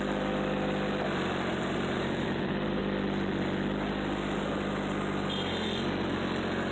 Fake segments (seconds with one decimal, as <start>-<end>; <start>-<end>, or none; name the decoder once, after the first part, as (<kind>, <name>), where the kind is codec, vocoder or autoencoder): 1.5-2.8 (vocoder, BigVGAN v2)